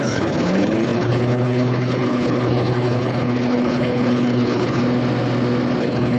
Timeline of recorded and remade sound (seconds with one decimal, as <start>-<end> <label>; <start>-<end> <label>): 0.0-4.8 remade; 4.8-5.8 recorded; 5.8-6.2 remade